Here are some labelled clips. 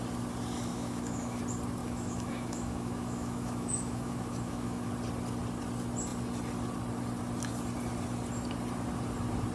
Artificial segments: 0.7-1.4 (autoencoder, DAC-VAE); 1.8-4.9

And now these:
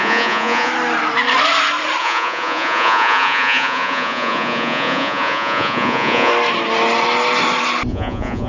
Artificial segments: 0.0-0.7 (vocoder, Vocos); 2.0-6.3; 7.9-8.5

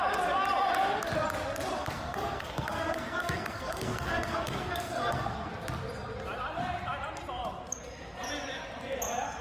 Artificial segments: 1.8-5.5 (codec, SNAC)

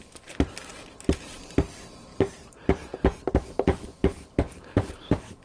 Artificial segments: 0.7-1.3 (vocoder, BigVGAN v2); 2.1-5.4

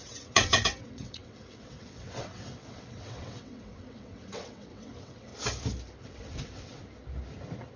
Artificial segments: 0.0-5.3 (vocoder, WaveNeXt); 6.0-6.8

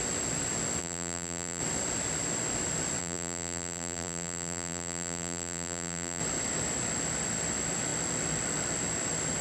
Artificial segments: 0.8-1.6 (vocoder, BigVGAN v2); 3.0-6.2